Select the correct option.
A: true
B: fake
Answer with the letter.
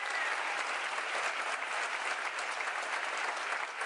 A